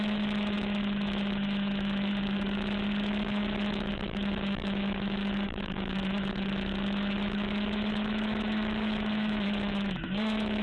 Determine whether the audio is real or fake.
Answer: fake